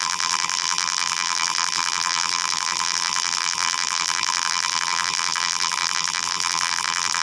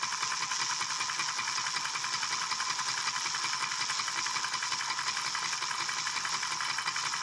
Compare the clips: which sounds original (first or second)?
second